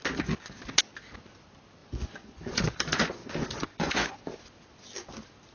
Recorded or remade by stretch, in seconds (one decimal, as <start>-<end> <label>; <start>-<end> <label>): 0.0-1.8 recorded; 1.8-2.6 remade; 2.6-3.2 recorded; 3.2-4.4 remade; 4.4-5.5 recorded

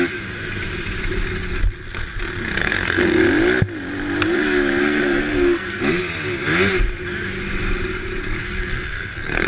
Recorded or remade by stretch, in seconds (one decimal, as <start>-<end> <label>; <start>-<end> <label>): 0.0-2.6 recorded; 2.6-3.2 remade; 3.2-4.8 recorded; 4.8-5.8 remade; 5.8-8.4 recorded; 8.4-9.5 remade

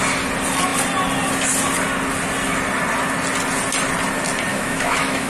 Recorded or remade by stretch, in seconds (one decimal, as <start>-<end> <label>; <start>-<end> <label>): 0.0-4.5 recorded; 4.5-5.3 remade

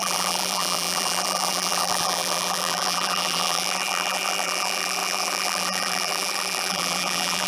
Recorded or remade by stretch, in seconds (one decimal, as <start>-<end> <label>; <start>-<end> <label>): 0.0-7.5 remade

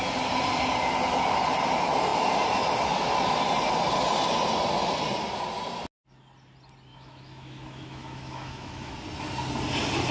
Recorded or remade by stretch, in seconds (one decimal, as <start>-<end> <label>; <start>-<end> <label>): 0.0-6.9 recorded; 6.9-8.9 remade; 8.9-10.1 recorded

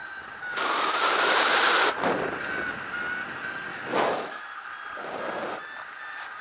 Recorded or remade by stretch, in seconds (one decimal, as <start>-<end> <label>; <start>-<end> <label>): 0.0-3.7 recorded; 3.7-4.4 remade; 4.4-6.4 recorded

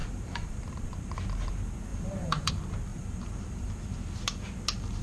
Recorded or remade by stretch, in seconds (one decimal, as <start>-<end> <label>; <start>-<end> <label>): 0.0-0.8 remade; 0.8-1.9 recorded; 1.9-2.5 remade; 2.5-2.9 recorded; 2.9-3.7 remade; 3.7-5.0 recorded